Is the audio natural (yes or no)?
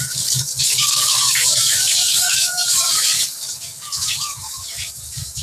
no